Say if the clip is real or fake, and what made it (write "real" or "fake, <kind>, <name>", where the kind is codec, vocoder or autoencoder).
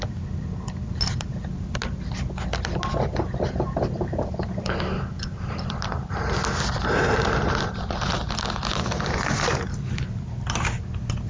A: real